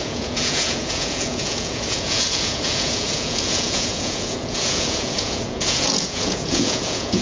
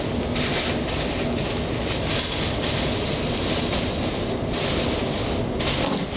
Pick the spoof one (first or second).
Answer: first